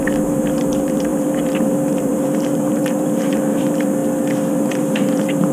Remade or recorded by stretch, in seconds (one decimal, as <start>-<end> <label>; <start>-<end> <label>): 0.0-4.0 remade; 4.0-4.5 recorded; 4.5-5.5 remade